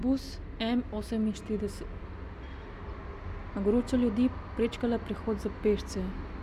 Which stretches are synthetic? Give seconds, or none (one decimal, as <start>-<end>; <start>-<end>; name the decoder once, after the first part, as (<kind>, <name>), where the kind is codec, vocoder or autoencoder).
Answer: none